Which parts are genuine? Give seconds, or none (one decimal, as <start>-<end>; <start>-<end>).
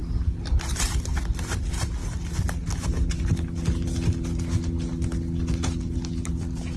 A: 0.0-6.8